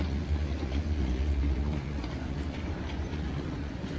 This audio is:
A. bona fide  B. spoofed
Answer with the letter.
B